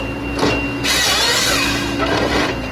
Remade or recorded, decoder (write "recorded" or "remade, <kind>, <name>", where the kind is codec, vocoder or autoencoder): recorded